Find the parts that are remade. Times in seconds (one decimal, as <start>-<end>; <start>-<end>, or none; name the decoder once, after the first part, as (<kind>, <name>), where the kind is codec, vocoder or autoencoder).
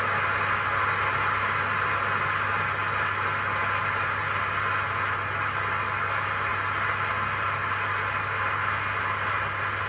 none